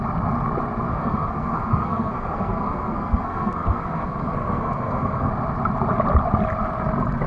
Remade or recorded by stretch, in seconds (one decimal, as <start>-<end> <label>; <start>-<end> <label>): 0.0-0.9 recorded; 0.9-5.3 remade; 5.3-7.3 recorded